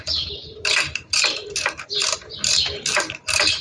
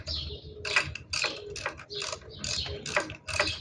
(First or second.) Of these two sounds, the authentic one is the second